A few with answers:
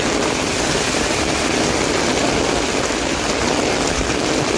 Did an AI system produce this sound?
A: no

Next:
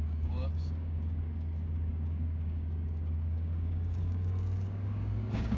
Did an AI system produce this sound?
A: yes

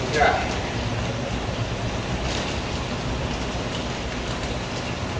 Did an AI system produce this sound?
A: no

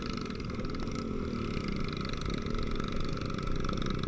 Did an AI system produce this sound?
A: no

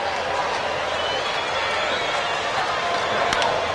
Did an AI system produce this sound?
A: no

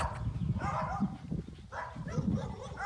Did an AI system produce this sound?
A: no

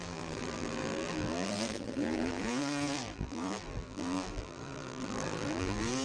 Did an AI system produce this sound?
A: yes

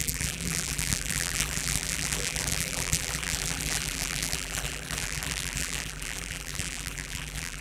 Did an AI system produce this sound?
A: yes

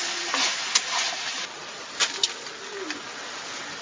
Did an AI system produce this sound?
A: no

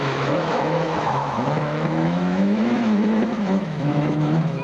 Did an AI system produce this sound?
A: yes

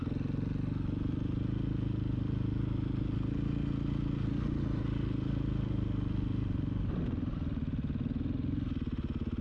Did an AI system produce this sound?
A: no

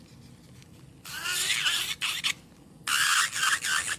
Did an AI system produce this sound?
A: no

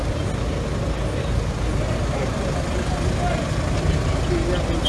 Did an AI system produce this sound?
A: no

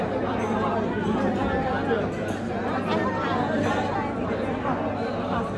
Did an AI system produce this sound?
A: no